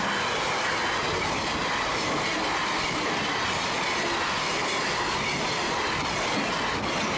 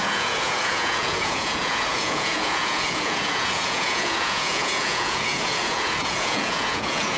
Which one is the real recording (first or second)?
first